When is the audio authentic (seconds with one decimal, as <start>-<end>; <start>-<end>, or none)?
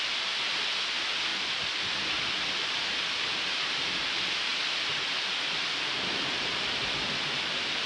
0.0-7.9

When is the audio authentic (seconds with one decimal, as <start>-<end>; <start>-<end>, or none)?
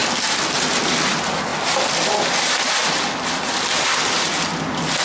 0.0-5.0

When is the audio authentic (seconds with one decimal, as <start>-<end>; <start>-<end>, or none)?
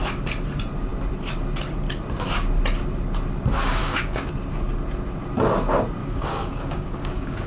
0.0-3.8; 4.3-6.0